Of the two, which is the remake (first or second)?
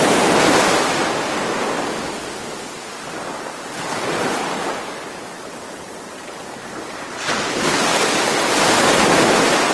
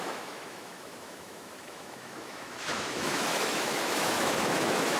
second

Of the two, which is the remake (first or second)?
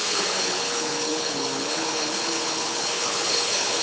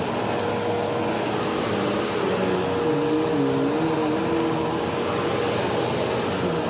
first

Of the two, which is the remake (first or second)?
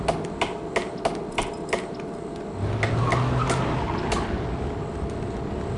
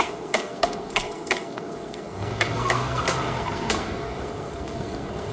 second